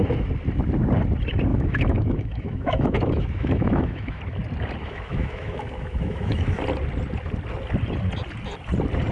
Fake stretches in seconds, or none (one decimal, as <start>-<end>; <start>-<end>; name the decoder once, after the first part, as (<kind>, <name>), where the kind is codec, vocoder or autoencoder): 1.5-4.2 (autoencoder, DAC-VAE); 4.8-6.6